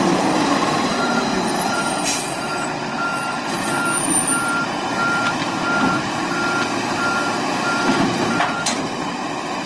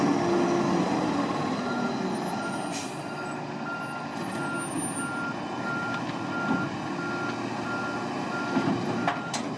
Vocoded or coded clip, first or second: first